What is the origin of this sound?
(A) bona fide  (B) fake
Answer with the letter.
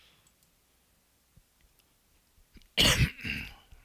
A